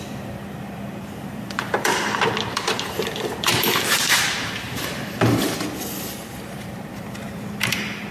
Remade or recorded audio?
remade